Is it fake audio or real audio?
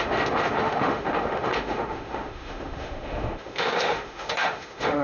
fake